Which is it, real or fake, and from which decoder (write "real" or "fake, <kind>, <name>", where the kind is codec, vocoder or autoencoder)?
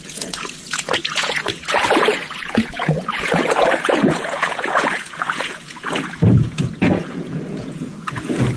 fake, vocoder, Vocos